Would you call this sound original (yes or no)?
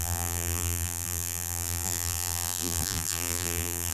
no